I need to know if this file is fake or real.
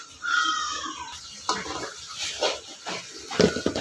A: real